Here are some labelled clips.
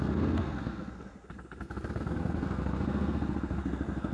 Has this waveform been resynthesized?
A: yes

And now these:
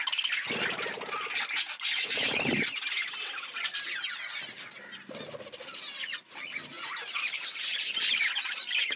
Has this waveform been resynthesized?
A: no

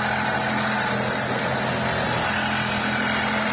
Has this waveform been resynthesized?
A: no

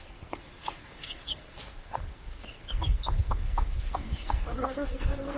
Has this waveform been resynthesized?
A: yes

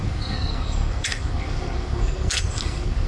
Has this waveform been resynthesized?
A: yes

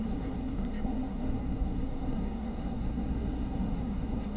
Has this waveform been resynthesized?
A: yes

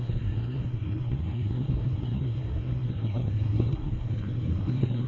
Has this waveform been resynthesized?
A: yes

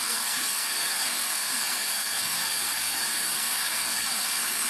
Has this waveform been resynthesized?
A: yes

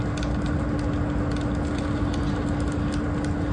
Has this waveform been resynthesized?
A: no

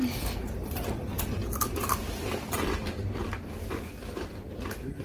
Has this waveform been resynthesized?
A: no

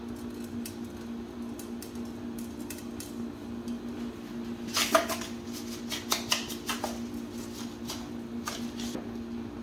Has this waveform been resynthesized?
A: no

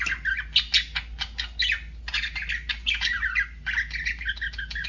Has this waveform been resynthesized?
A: no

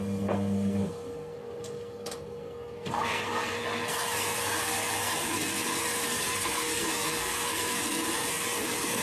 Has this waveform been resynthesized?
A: yes